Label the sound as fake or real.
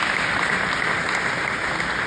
real